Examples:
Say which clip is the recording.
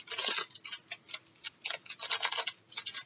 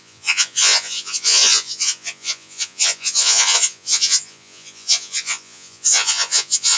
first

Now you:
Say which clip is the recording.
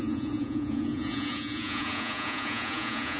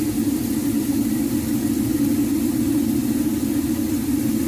second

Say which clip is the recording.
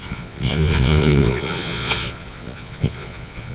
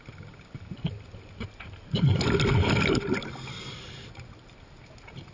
second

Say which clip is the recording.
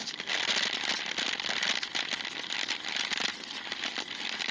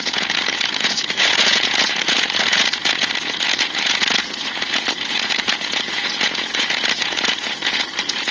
first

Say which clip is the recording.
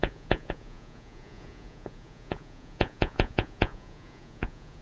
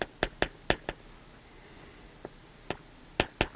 second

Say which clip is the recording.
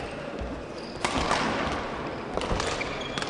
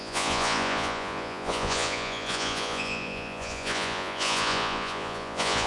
first